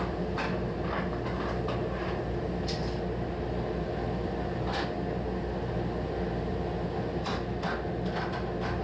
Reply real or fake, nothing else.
real